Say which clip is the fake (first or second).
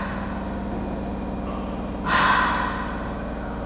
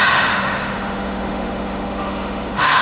second